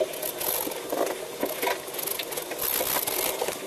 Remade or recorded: recorded